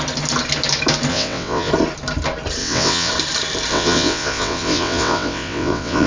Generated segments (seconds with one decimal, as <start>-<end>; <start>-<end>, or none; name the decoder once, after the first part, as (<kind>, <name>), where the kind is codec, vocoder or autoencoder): 1.1-1.7 (vocoder, WaveNeXt); 2.6-3.1; 3.7-6.1